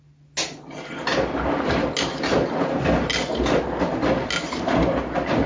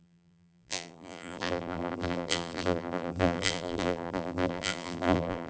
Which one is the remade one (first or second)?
second